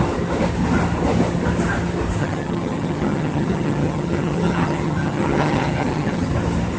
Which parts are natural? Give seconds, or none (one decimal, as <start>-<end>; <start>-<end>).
0.0-2.2; 6.3-6.8

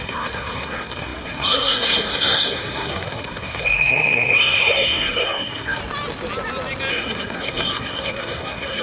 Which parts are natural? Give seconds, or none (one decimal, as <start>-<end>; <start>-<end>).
5.8-6.9

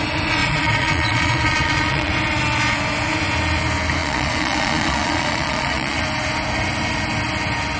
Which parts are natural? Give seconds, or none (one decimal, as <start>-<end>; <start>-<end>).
0.0-0.4; 2.1-4.0; 6.0-7.8